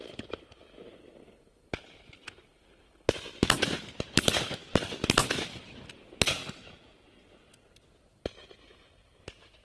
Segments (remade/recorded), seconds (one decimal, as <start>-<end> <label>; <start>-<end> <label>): 0.0-9.6 recorded